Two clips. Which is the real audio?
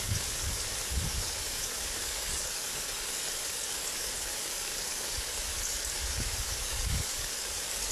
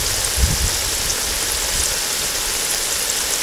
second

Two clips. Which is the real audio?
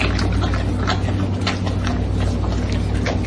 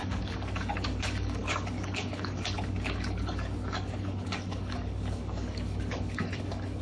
first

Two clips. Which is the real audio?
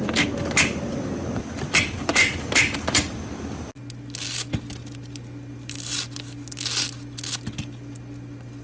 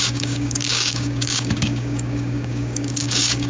first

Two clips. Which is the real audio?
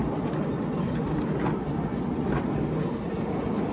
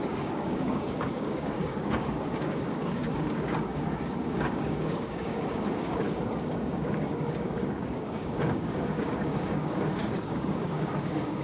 first